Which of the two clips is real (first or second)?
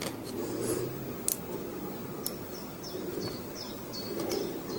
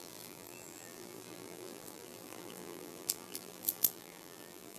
first